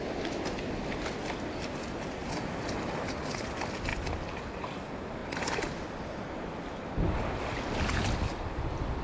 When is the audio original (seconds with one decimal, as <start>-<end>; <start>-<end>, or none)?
0.0-2.2; 3.0-5.2; 6.3-9.0